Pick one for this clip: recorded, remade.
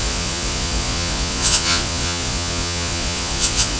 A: remade